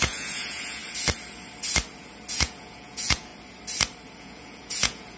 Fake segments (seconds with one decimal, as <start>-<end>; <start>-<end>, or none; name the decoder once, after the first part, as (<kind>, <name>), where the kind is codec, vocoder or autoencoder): 0.0-0.8 (vocoder, Vocos); 2.3-3.3; 4.2-5.2